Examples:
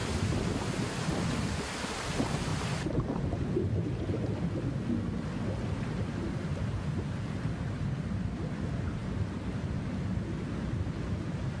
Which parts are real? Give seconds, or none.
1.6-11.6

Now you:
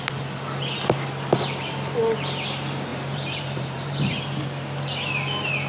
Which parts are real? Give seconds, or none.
0.0-2.9; 4.1-5.7